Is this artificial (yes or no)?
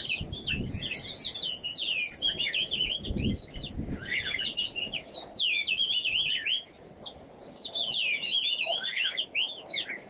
yes